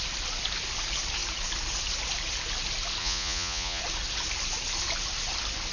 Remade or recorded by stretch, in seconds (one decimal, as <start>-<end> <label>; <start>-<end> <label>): 0.0-3.0 recorded; 3.0-3.8 remade; 3.8-5.7 recorded